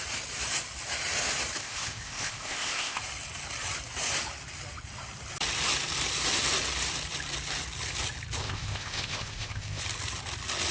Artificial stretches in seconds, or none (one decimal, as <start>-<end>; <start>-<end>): 1.6-3.0; 8.4-9.8